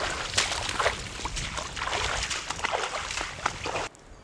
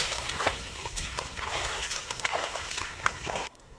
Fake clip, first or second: second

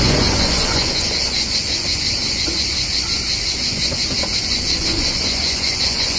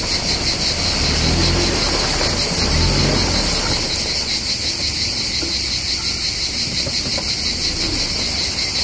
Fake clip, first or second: first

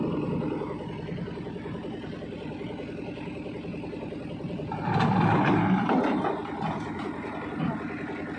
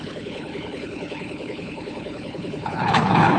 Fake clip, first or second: second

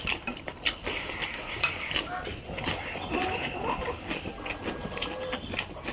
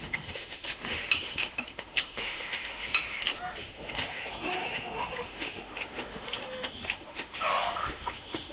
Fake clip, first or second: second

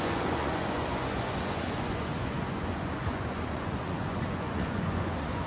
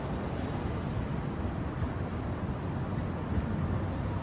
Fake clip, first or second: first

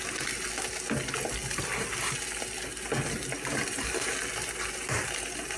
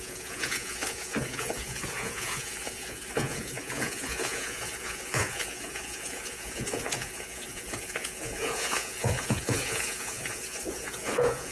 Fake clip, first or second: second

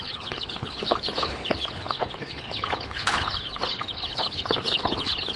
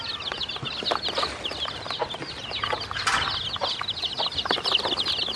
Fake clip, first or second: first